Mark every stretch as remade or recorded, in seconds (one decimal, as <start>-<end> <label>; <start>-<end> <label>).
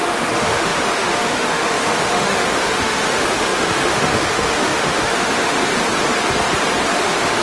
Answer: 0.0-5.7 remade; 5.7-7.0 recorded; 7.0-7.4 remade